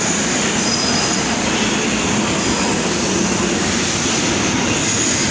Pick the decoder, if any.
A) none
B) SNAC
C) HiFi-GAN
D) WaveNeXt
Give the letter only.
A